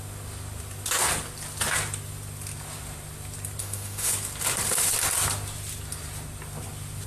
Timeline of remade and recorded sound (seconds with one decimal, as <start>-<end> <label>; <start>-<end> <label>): 0.0-3.6 recorded; 3.6-4.1 remade; 4.1-7.1 recorded